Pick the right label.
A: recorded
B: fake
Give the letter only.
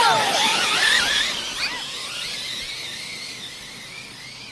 A